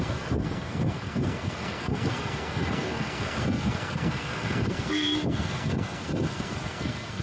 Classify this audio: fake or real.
fake